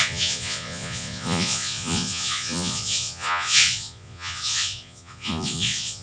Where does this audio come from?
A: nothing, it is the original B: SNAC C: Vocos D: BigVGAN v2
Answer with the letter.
C